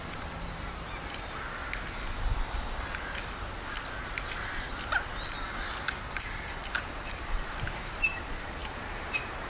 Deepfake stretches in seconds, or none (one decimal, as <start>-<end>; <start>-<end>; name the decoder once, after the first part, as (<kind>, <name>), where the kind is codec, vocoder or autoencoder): 0.0-1.6 (vocoder, BigVGAN v2); 6.0-9.5